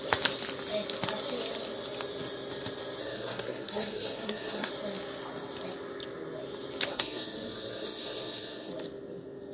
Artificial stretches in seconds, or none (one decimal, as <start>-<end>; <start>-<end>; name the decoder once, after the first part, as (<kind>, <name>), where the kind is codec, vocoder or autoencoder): 3.0-4.7 (codec, SNAC); 6.9-8.7